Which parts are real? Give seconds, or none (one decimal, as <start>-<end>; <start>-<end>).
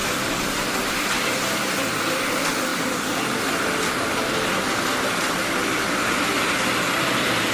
2.0-2.7; 3.4-7.5